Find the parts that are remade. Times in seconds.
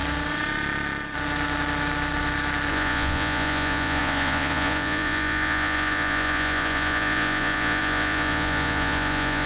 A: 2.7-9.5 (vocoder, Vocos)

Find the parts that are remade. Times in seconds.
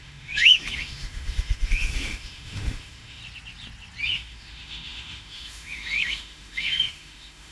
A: 0.0-3.2 (autoencoder, DAC-VAE); 4.1-7.5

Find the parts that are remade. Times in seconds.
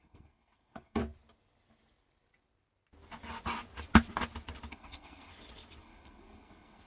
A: 0.0-1.0 (codec, SNAC); 4.7-5.3; 5.8-6.9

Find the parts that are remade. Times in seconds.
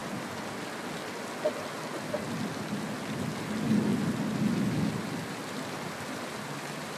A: none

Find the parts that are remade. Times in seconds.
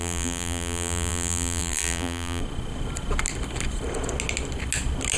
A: 0.0-2.4 (vocoder, BigVGAN v2)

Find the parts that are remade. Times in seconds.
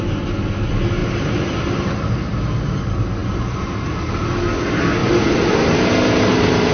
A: 1.0-1.7 (vocoder, BigVGAN v2); 3.2-3.9; 5.0-6.7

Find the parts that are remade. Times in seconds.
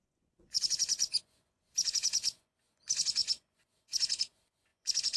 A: 0.0-5.2 (vocoder, Vocos)